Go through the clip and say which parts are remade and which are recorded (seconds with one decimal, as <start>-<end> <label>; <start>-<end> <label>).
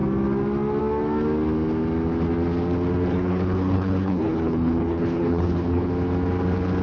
0.0-3.1 recorded; 3.1-5.9 remade; 5.9-6.8 recorded